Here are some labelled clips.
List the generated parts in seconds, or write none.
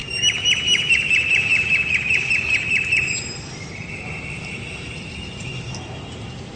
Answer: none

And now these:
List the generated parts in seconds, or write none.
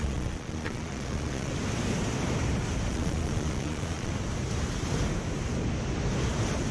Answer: 0.0-1.5 (vocoder, Vocos); 2.9-4.1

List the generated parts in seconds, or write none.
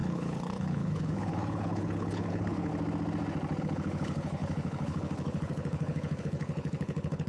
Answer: 0.0-2.7 (codec, HILCodec); 3.6-7.3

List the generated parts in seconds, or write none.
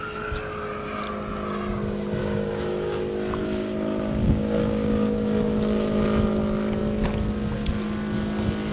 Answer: 2.2-3.0 (codec, DAC); 3.4-6.0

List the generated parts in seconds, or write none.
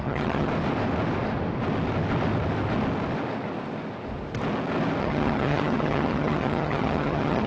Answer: 0.0-0.5 (vocoder, HiFi-GAN); 5.0-7.5